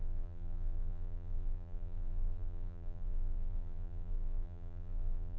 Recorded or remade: remade